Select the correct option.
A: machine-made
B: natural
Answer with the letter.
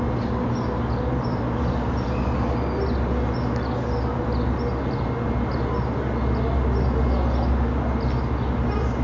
B